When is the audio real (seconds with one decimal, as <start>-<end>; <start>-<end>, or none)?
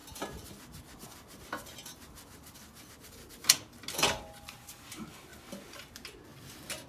0.0-6.9